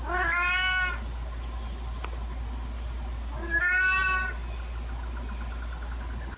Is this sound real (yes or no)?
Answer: yes